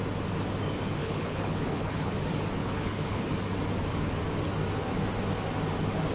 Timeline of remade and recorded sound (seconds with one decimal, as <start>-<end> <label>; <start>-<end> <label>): 0.0-1.0 recorded; 1.0-2.1 remade; 2.1-2.6 recorded; 2.6-3.2 remade; 3.2-6.1 recorded